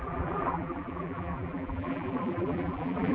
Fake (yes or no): yes